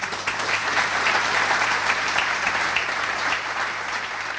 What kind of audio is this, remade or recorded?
remade